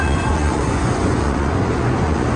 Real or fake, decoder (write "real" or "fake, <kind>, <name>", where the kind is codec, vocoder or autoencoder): fake, vocoder, Vocos